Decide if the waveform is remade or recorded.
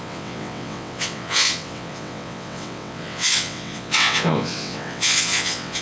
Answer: remade